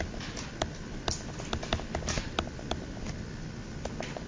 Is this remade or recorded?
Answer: recorded